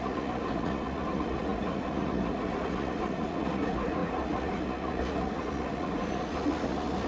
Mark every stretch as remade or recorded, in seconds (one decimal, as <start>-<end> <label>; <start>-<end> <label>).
0.0-7.1 remade